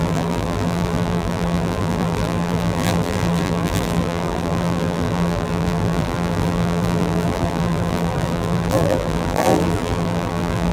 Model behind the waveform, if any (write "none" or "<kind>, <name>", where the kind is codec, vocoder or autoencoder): vocoder, BigVGAN v2